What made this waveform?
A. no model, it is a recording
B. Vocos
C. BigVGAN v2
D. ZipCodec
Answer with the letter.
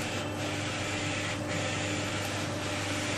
A